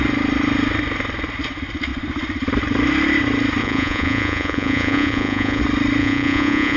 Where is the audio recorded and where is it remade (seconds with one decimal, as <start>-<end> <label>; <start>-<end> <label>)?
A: 0.0-3.6 recorded; 3.6-5.6 remade; 5.6-6.0 recorded; 6.0-6.8 remade